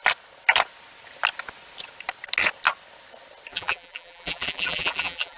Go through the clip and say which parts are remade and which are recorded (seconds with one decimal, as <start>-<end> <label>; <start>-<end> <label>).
0.0-3.5 recorded; 3.5-5.4 remade